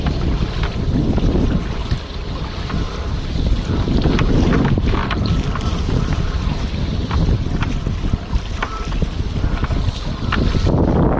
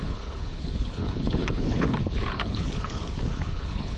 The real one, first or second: first